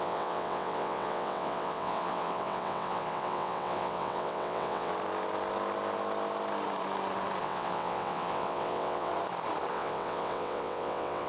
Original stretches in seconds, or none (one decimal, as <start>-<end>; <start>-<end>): 4.9-7.4; 9.1-9.7